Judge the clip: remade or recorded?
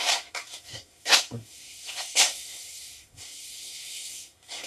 remade